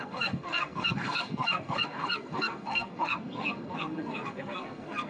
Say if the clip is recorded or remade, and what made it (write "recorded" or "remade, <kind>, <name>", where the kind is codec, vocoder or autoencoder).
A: remade, codec, SNAC